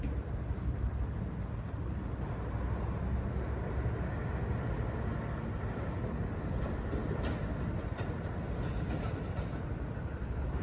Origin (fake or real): real